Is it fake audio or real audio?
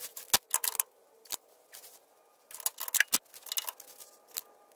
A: real